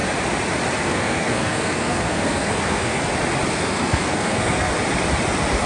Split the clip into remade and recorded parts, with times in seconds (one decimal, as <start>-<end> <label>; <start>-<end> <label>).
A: 0.0-0.8 recorded; 0.8-3.0 remade; 3.0-3.5 recorded; 3.5-4.7 remade; 4.7-5.7 recorded